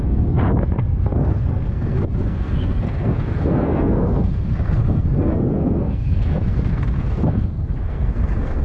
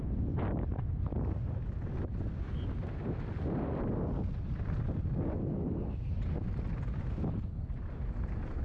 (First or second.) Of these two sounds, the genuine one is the second